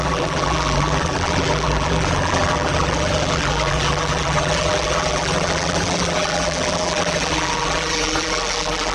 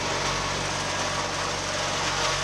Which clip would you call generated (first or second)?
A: first